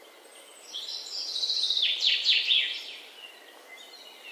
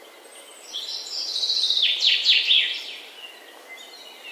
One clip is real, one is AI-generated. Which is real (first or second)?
second